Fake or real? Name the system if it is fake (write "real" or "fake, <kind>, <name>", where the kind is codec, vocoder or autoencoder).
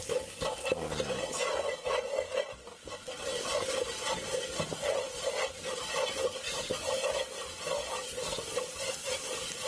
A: real